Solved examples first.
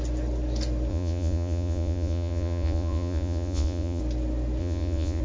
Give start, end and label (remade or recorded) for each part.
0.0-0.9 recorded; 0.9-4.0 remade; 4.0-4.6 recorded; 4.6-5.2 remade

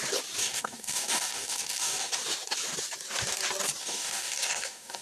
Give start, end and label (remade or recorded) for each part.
0.0-0.4 recorded; 0.4-2.1 remade; 2.1-3.8 recorded; 3.8-5.0 remade

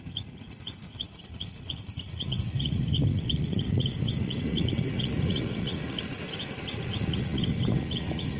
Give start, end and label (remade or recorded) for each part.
0.0-8.4 remade